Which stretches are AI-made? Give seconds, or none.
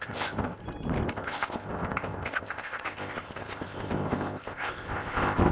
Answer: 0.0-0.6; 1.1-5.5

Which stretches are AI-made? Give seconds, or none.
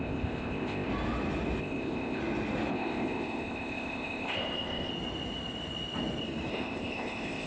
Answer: 0.0-0.9; 1.6-2.2; 2.7-4.9; 6.5-7.5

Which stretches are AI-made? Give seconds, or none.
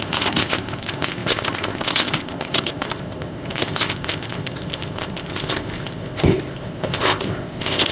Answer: 0.0-7.9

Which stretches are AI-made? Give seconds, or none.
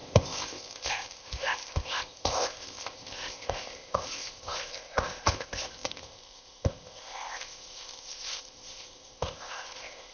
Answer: 0.0-10.1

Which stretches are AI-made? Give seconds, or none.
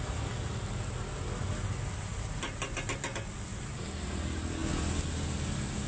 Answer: none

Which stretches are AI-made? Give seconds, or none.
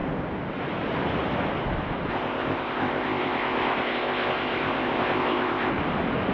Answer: 2.1-5.7